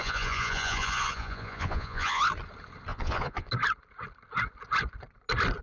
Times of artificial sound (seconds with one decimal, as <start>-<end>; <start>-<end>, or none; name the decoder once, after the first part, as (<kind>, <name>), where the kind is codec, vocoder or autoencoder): 0.0-2.2 (vocoder, Vocos); 2.9-3.5